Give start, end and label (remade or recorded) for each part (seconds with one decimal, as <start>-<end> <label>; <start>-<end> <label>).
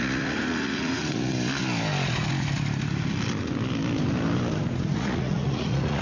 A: 0.0-1.3 remade; 1.3-4.9 recorded; 4.9-6.0 remade